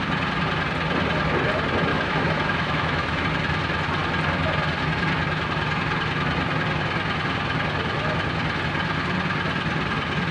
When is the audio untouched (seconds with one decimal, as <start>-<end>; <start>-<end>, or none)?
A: 0.0-1.9; 3.2-10.3